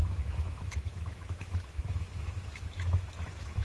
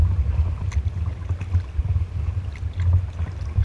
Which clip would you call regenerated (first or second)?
first